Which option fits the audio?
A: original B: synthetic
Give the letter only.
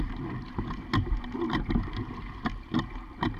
A